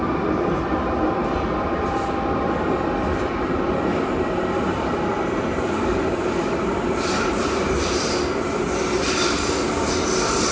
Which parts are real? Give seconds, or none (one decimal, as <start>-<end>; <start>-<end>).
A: 0.0-4.8